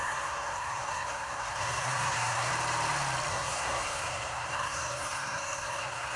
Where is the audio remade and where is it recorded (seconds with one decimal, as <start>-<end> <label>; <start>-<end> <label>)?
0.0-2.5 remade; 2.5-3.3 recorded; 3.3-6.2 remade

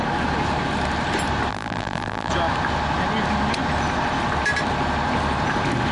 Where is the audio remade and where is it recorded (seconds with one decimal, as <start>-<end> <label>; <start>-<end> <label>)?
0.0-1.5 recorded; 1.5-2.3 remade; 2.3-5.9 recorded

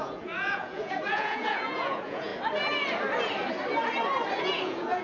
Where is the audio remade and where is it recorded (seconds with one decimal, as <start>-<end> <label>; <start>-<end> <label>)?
0.0-2.3 remade; 2.3-4.4 recorded; 4.4-5.0 remade

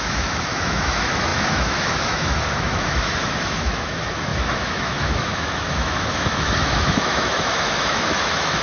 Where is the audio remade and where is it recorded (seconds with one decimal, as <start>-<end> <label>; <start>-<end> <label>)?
0.0-8.6 remade

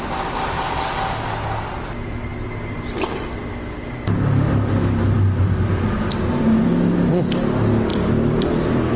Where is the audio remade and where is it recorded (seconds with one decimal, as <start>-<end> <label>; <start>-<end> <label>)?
0.0-7.9 recorded; 7.9-9.0 remade

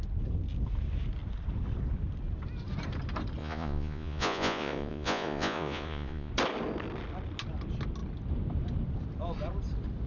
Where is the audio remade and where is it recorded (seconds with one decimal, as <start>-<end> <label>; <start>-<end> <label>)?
0.0-3.4 recorded; 3.4-6.3 remade; 6.3-10.1 recorded

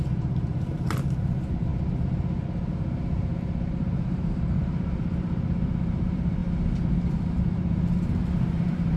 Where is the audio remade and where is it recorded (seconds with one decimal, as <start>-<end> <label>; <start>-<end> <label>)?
0.0-1.7 remade; 1.7-2.7 recorded; 2.7-6.4 remade; 6.4-7.1 recorded; 7.1-9.0 remade